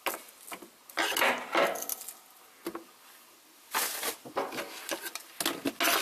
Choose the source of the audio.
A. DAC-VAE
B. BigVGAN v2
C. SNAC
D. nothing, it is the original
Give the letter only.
D